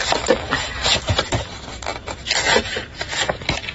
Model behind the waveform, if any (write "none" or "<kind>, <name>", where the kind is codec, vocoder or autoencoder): none